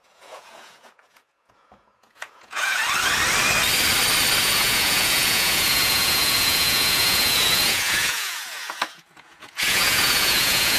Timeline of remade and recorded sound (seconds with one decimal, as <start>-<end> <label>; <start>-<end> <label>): 0.0-2.8 remade; 2.8-4.4 recorded; 4.4-10.8 remade